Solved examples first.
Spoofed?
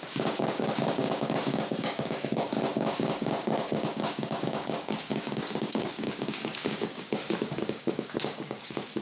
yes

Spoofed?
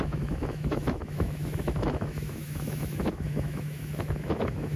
yes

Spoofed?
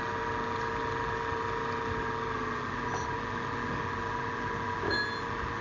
no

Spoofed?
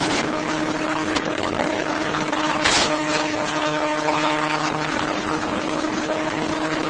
yes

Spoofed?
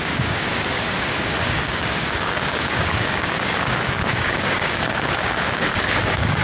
yes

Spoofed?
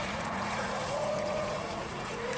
yes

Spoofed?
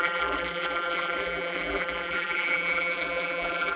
yes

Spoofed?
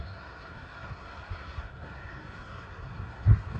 yes